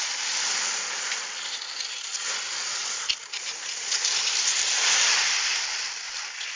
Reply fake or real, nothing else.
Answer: fake